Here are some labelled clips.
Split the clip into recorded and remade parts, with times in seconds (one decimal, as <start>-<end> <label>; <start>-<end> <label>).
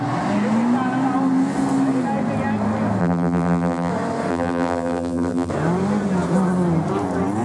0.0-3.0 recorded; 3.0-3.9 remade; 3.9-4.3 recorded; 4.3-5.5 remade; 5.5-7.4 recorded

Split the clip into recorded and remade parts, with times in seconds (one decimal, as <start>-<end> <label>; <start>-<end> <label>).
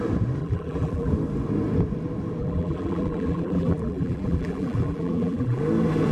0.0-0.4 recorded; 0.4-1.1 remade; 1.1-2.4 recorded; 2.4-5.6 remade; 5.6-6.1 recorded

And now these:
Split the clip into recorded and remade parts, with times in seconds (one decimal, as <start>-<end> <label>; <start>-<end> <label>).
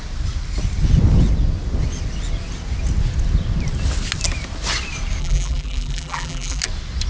0.0-5.2 recorded; 5.2-6.6 remade; 6.6-7.1 recorded